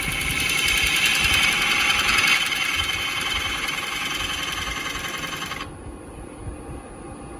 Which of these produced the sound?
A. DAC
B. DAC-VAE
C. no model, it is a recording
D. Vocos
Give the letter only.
C